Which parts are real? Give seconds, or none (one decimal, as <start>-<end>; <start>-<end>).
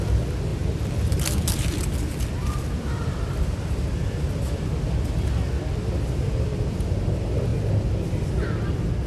0.0-0.5; 4.9-9.1